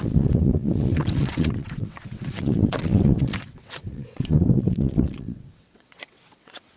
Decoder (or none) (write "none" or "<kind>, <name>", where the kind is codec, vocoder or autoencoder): vocoder, WaveNeXt